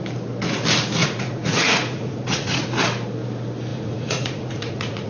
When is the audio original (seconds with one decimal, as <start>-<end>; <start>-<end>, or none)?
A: 0.0-1.0; 2.8-3.7